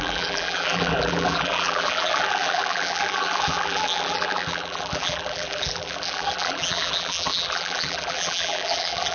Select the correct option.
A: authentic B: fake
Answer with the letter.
B